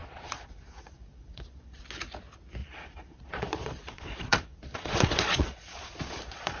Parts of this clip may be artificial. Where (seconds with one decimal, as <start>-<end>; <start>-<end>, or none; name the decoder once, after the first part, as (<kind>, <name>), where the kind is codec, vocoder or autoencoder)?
0.0-1.8 (vocoder, Vocos); 2.6-6.6